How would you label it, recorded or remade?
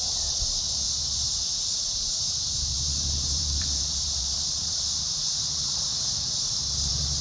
remade